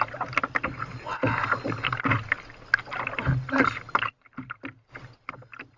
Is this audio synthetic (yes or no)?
no